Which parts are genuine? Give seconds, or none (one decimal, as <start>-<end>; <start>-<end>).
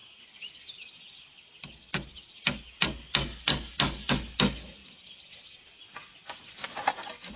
0.0-7.4